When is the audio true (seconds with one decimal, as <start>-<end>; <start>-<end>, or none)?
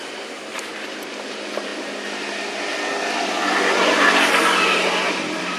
1.7-5.1